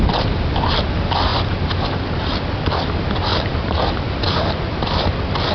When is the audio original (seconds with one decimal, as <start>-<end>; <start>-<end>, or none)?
0.0-3.3; 4.7-5.5